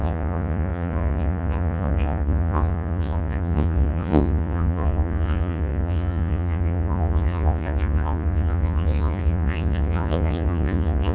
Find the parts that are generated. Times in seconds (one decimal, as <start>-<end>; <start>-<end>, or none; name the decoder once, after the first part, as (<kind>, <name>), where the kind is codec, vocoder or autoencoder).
0.0-11.1 (vocoder, Vocos)